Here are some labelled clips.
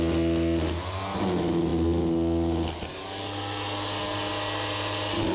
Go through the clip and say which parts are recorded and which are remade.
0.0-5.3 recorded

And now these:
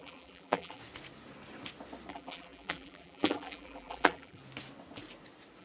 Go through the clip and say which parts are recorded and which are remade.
0.0-0.8 remade; 0.8-2.1 recorded; 2.1-4.4 remade; 4.4-5.6 recorded

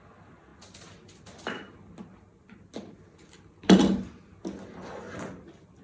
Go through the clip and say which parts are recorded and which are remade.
0.0-5.8 recorded

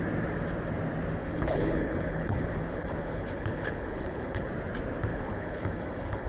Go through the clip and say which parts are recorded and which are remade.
0.0-1.2 recorded; 1.2-4.5 remade; 4.5-5.1 recorded; 5.1-6.3 remade

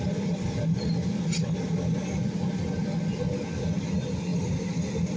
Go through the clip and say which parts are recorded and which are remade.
0.0-5.2 recorded

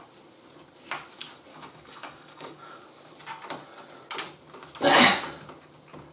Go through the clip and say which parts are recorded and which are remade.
0.0-1.5 recorded; 1.5-2.8 remade; 2.8-6.1 recorded

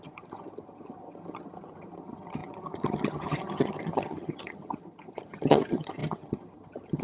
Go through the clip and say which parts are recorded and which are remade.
0.0-7.0 remade